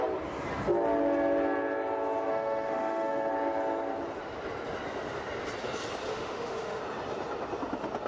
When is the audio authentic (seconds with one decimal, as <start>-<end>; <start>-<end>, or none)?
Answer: 0.0-2.3; 3.3-6.1; 6.8-8.1